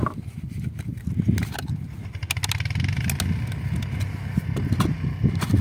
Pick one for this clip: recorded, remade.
recorded